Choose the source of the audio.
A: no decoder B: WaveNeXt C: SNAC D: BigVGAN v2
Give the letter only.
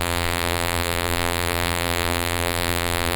D